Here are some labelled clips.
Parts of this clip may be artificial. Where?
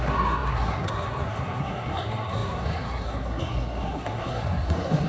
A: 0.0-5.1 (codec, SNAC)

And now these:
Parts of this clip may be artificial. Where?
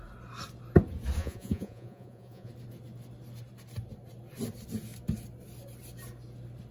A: 1.2-2.5 (vocoder, Vocos)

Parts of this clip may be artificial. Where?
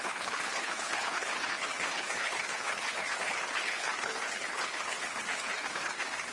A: 0.0-6.3 (codec, HILCodec)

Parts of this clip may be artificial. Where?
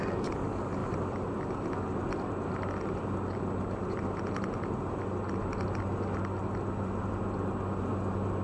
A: none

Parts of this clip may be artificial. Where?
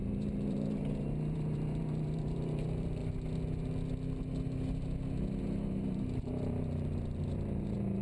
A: 0.0-3.0 (vocoder, BigVGAN v2); 5.4-8.0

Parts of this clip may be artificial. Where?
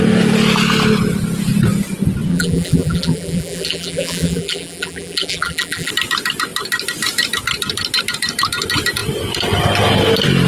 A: 2.3-5.9 (vocoder, BigVGAN v2)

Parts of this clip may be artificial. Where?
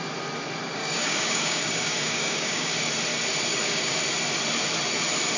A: 0.8-2.9 (codec, DAC); 3.5-4.0